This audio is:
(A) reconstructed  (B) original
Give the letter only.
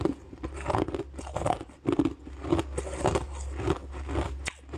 B